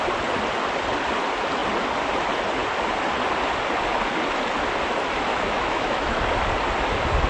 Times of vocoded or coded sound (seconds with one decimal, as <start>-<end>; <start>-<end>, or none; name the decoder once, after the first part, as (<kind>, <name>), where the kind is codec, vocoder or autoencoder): 5.3-6.2 (autoencoder, DAC-VAE)